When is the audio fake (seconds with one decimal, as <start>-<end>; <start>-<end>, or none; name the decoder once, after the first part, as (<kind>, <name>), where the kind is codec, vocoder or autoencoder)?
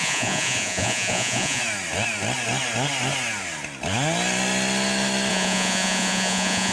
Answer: 0.0-1.6 (vocoder, Vocos); 5.3-6.7